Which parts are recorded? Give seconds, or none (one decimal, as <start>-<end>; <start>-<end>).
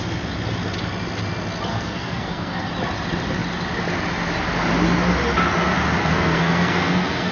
0.0-1.7; 2.7-6.0